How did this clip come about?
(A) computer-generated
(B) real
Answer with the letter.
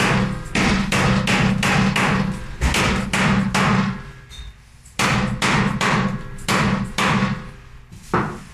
B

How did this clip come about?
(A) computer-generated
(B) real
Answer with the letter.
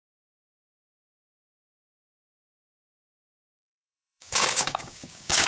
A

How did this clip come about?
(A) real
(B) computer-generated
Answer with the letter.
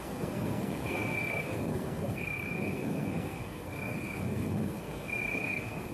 B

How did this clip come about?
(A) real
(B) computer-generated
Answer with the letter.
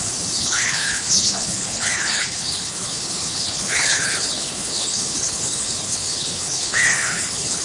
B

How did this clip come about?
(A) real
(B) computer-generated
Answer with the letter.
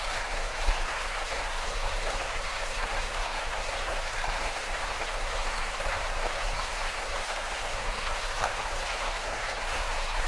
B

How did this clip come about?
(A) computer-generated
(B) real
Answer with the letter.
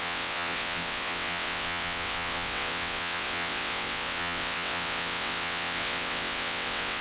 A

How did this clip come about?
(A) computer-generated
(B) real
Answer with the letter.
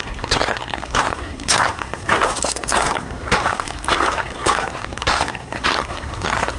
A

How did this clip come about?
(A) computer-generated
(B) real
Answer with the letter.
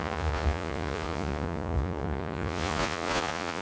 A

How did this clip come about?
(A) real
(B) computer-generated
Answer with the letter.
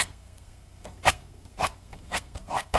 B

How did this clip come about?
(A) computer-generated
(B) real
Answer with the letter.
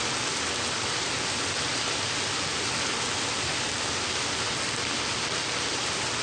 B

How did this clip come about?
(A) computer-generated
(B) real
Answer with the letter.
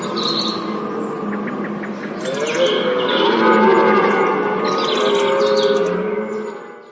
B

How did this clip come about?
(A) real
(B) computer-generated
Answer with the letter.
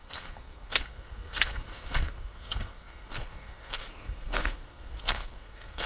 B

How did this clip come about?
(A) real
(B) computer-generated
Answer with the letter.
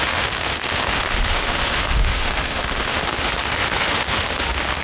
B